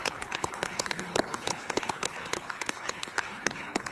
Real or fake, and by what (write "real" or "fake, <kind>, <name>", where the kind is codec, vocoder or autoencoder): fake, codec, HILCodec